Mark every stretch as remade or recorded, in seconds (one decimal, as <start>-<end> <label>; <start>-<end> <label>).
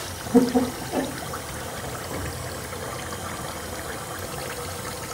0.0-5.1 recorded